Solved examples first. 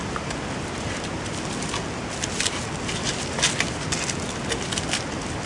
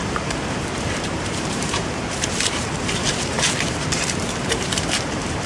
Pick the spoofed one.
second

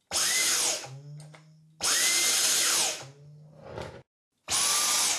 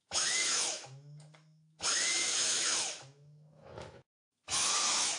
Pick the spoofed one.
second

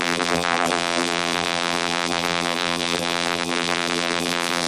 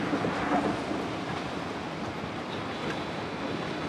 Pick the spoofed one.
first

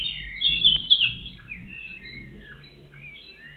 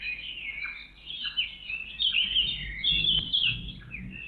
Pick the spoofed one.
first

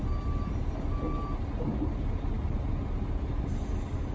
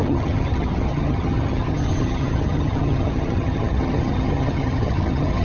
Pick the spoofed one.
second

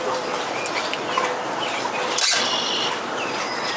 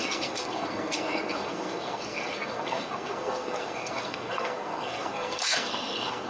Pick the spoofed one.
second